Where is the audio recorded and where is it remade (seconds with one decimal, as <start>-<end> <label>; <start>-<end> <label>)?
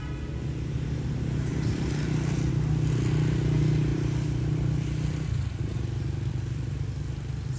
0.0-1.5 recorded; 1.5-2.5 remade; 2.5-7.6 recorded